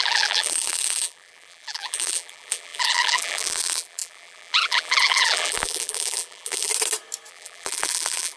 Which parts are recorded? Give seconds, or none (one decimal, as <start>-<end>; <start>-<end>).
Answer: 6.7-7.3